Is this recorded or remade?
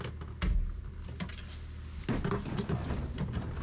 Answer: recorded